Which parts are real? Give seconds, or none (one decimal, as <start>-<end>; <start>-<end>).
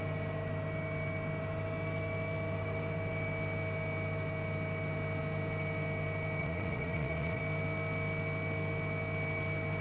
0.0-6.4; 7.4-9.8